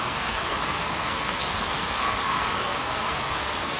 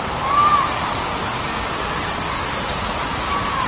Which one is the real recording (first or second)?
second